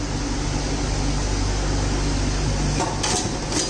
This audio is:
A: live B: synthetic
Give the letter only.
A